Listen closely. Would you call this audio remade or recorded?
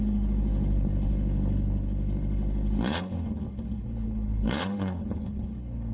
remade